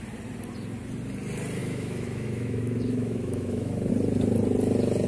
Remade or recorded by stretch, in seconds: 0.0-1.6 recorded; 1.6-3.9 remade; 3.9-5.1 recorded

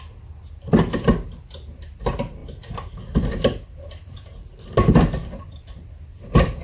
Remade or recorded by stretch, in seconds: 0.0-6.6 recorded

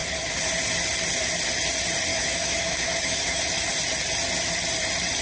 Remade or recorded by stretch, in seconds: 0.0-2.1 recorded; 2.1-3.4 remade; 3.4-5.2 recorded

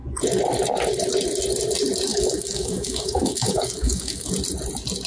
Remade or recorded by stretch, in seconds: 0.0-2.1 recorded; 2.1-4.3 remade; 4.3-5.1 recorded

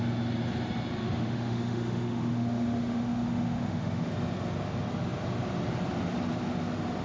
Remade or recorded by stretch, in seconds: 0.0-1.0 recorded; 1.0-4.1 remade; 4.1-7.0 recorded

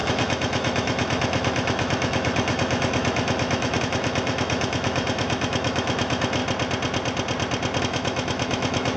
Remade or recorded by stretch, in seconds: 0.0-6.4 remade; 6.4-7.8 recorded; 7.8-9.0 remade

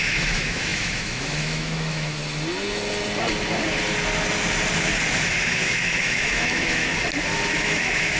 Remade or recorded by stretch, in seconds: 0.0-2.2 remade; 2.2-5.1 recorded; 5.1-6.9 remade; 6.9-7.5 recorded; 7.5-8.2 remade

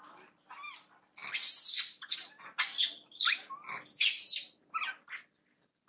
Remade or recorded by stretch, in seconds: 0.0-5.9 recorded